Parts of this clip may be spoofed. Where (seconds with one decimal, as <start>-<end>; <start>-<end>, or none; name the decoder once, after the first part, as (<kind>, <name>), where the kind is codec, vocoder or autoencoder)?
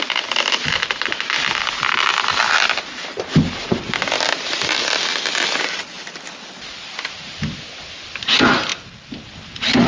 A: none